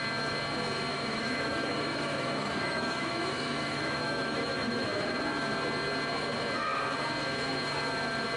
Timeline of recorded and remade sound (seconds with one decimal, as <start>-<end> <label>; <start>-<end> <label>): 0.0-0.9 recorded; 0.9-4.9 remade; 4.9-8.4 recorded